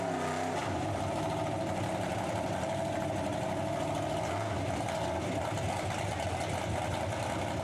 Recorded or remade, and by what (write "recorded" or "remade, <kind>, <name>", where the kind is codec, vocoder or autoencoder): recorded